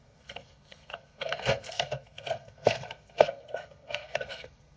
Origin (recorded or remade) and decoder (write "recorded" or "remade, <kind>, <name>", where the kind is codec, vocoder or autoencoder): remade, codec, SNAC